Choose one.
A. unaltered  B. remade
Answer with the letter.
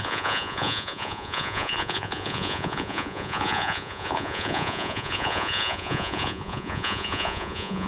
B